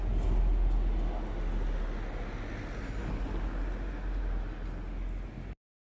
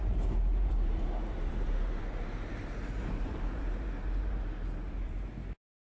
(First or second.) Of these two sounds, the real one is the first